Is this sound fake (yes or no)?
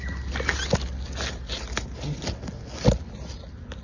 no